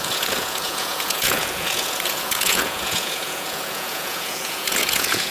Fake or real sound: fake